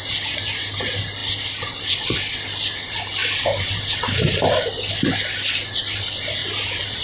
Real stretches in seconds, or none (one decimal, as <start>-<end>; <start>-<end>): 0.0-7.0